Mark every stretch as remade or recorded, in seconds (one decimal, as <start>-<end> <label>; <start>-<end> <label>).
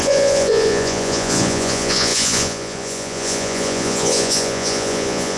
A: 0.0-5.4 remade